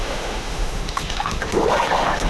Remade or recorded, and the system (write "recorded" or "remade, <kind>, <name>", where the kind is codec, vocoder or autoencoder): remade, autoencoder, DAC-VAE